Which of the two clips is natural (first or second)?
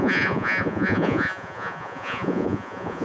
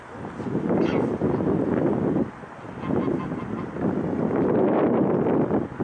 second